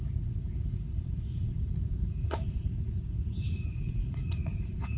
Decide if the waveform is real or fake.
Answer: fake